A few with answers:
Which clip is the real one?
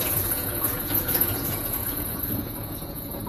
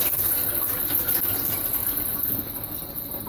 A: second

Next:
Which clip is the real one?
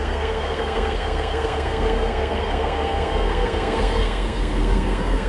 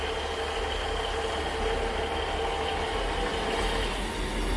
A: second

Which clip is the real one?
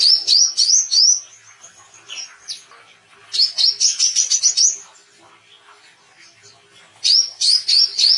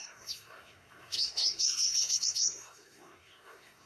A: first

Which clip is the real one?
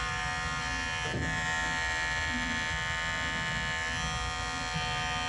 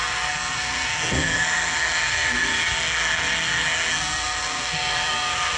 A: first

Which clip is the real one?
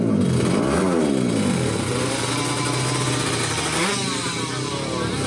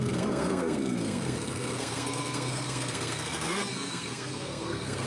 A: first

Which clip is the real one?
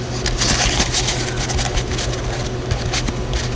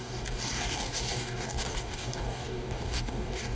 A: first